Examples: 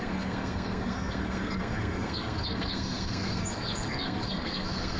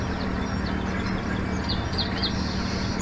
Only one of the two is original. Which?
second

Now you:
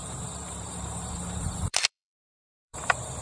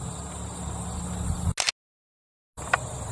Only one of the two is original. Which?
second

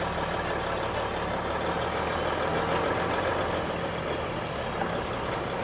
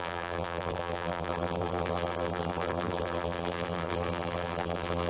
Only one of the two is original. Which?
first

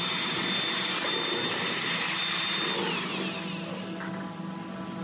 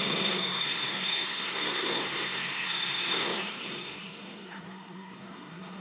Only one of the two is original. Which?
first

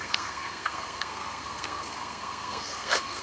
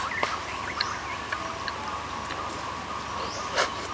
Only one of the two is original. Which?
second